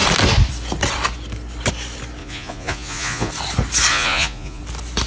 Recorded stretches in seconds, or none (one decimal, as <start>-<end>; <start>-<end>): 0.0-2.2; 3.3-3.9; 4.6-5.1

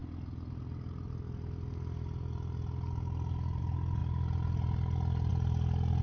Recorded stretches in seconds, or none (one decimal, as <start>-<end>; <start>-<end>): 0.0-6.0

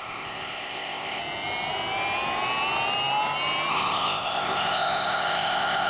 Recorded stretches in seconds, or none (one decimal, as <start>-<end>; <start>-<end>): 1.2-3.7

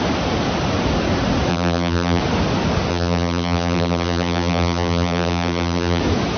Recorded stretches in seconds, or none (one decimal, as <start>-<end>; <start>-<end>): 0.0-1.5; 2.2-2.9; 6.0-6.4

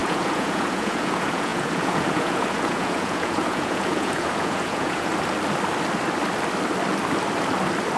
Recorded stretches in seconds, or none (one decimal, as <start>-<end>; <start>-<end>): 5.1-8.0

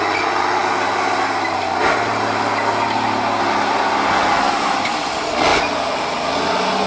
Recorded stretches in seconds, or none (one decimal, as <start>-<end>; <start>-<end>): 0.0-6.9

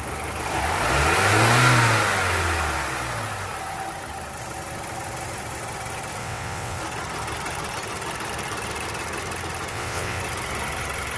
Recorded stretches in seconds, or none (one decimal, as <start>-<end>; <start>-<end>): 0.0-6.2; 6.8-9.7; 10.2-11.2

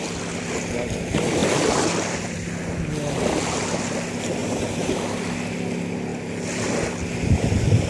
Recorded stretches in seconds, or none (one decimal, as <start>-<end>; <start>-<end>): 0.0-4.4; 5.0-7.9